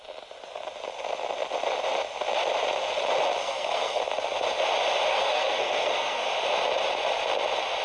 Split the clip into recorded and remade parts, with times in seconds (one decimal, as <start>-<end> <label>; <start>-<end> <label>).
0.0-3.4 recorded; 3.4-4.0 remade; 4.0-5.1 recorded; 5.1-6.3 remade; 6.3-7.8 recorded